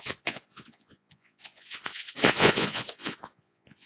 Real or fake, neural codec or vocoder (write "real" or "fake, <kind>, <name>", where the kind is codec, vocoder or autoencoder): fake, vocoder, Vocos